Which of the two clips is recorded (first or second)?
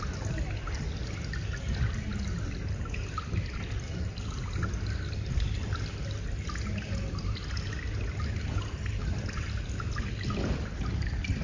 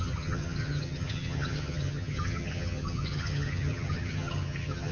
first